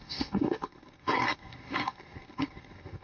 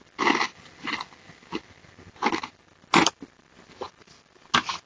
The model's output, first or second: first